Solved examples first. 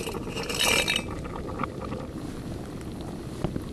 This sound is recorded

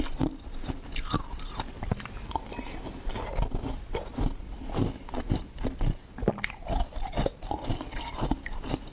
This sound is recorded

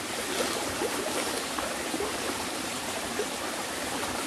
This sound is recorded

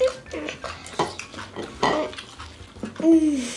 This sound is recorded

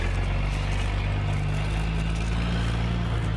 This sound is recorded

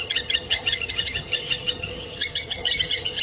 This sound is remade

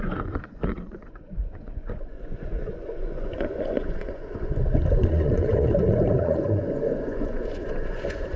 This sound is remade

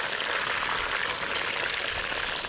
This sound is recorded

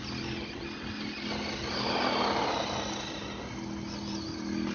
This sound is recorded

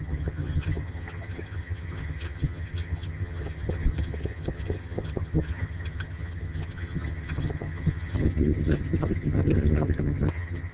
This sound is remade